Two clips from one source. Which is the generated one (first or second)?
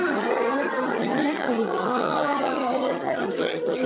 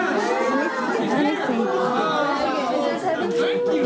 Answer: first